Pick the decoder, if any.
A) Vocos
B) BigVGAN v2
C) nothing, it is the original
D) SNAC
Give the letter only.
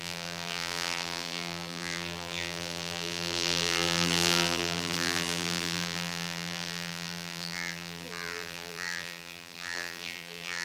B